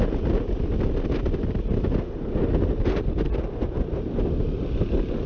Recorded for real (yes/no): yes